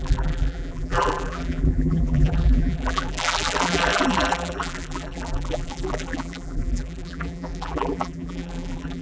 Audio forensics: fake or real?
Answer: fake